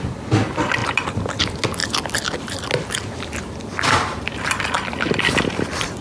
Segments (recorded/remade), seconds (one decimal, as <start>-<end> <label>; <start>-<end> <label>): 0.0-0.8 recorded; 0.8-1.4 remade; 1.4-1.8 recorded; 1.8-4.6 remade; 4.6-6.0 recorded